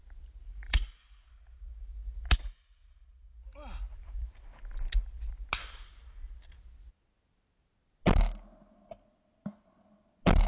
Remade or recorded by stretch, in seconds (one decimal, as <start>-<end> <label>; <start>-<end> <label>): 0.0-0.4 recorded; 0.4-1.3 remade; 1.3-10.5 recorded